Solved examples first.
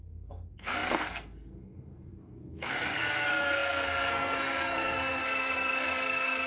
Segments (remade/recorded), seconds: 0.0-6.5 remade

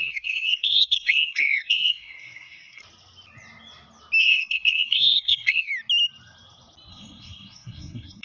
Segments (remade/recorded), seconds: 0.0-2.8 remade; 2.8-4.2 recorded; 4.2-5.7 remade; 5.7-6.9 recorded; 6.9-8.2 remade

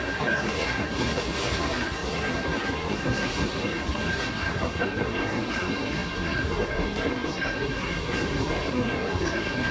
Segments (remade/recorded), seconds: 0.0-9.7 remade

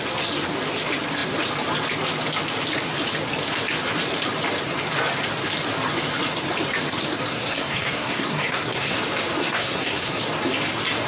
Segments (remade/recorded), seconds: 0.0-7.3 recorded; 7.3-9.0 remade; 9.0-9.4 recorded; 9.4-10.2 remade; 10.2-11.1 recorded